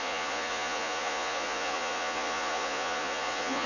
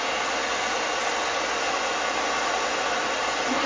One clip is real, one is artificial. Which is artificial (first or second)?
first